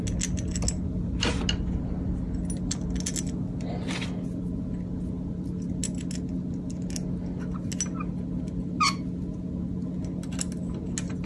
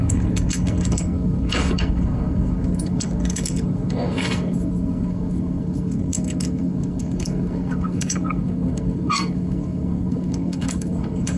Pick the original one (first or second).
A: first